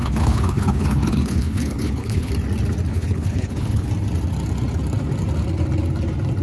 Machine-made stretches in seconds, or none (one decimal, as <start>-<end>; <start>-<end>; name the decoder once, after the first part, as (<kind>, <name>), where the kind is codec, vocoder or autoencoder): 0.0-2.3 (codec, HILCodec); 2.9-3.9